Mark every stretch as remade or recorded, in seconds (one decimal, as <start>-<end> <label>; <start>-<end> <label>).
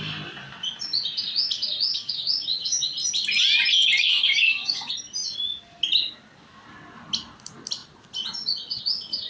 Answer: 0.0-1.9 recorded; 1.9-2.9 remade; 2.9-4.1 recorded; 4.1-4.9 remade; 4.9-9.3 recorded